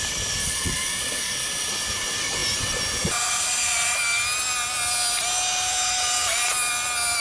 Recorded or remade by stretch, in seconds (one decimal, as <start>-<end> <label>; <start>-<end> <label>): 0.0-0.4 recorded; 0.4-1.7 remade; 1.7-7.2 recorded